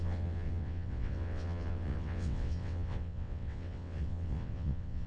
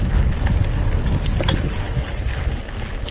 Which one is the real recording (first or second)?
second